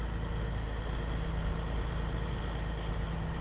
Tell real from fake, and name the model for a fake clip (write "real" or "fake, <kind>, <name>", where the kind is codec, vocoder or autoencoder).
real